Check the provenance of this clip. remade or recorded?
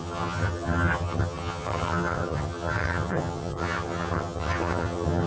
remade